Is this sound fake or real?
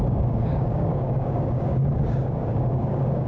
fake